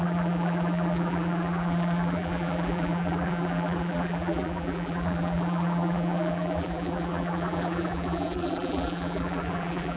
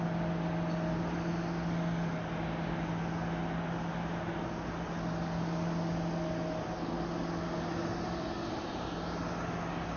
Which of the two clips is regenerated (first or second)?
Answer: first